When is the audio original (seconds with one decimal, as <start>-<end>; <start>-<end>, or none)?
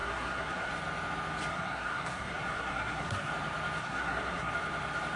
0.7-1.5; 3.3-3.8; 4.5-5.2